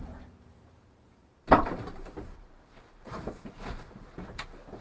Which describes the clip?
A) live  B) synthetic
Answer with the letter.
B